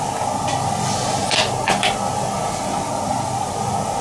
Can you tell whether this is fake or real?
real